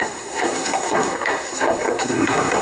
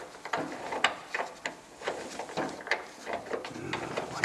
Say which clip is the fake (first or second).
first